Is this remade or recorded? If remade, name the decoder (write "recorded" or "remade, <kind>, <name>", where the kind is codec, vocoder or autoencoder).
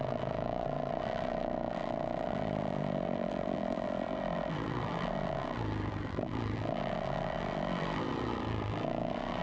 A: remade, vocoder, BigVGAN v2